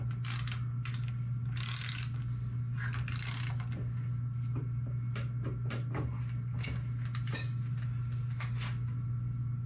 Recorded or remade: recorded